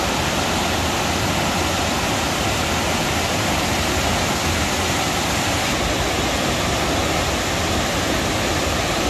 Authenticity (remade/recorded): recorded